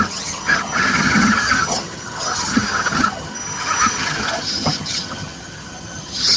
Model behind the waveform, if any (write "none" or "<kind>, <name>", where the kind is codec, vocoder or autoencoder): vocoder, HiFi-GAN